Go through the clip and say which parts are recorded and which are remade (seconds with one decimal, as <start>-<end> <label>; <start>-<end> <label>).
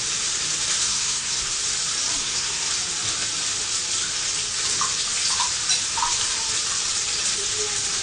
0.0-0.8 recorded; 0.8-1.4 remade; 1.4-2.2 recorded; 2.2-2.7 remade; 2.7-8.0 recorded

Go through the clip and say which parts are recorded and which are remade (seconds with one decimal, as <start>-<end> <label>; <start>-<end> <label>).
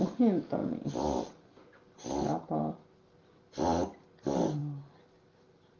0.0-5.8 recorded